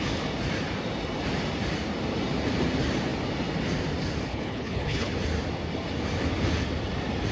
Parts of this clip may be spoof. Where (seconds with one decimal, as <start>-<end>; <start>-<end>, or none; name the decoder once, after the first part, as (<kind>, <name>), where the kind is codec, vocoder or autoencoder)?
4.3-5.1 (codec, HILCodec)